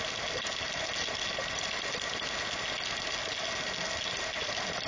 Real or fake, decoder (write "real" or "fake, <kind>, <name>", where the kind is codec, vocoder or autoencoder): real